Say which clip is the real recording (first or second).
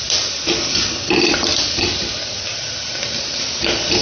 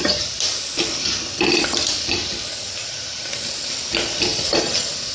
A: first